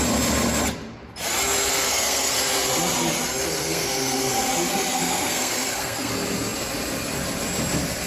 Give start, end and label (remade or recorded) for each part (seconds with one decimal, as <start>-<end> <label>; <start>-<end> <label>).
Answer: 0.0-1.7 recorded; 1.7-2.3 remade; 2.3-3.6 recorded; 3.6-4.3 remade; 4.3-4.7 recorded; 4.7-6.1 remade; 6.1-8.1 recorded